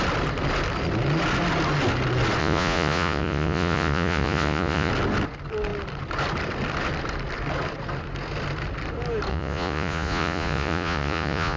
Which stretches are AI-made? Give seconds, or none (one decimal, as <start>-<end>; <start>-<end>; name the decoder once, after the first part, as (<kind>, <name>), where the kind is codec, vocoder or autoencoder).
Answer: 2.4-4.9 (vocoder, Vocos); 9.3-11.6